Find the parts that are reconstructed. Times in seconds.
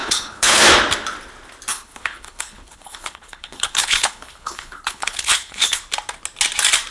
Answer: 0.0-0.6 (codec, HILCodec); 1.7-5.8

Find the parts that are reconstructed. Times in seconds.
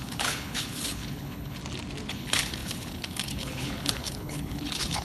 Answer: 0.0-1.6 (codec, HILCodec); 2.1-5.0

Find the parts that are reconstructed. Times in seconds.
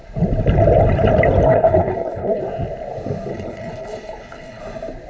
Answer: 1.5-2.4 (codec, HILCodec); 3.3-4.6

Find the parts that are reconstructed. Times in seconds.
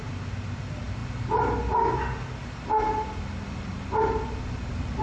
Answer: none